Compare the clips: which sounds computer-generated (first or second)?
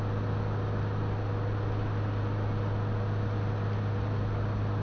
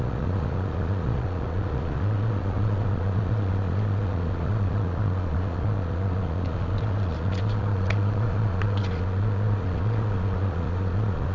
second